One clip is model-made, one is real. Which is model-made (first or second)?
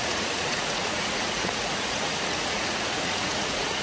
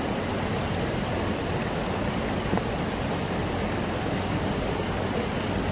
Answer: first